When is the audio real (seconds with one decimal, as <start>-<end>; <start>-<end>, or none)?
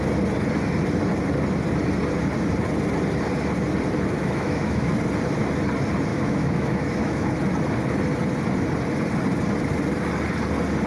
0.0-4.2; 4.9-6.1; 7.3-10.9